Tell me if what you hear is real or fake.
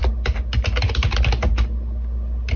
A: real